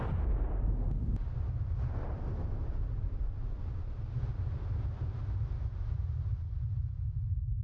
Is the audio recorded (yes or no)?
yes